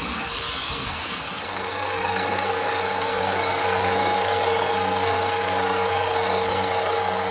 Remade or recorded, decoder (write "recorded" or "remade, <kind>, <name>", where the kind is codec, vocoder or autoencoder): remade, codec, SNAC